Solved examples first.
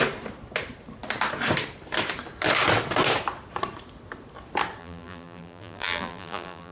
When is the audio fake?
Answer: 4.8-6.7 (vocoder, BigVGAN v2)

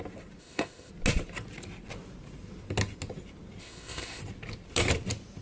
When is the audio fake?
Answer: 0.4-0.9 (codec, ZipCodec); 3.6-4.2